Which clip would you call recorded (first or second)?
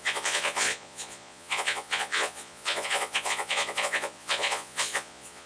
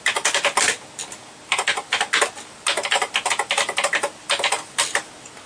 second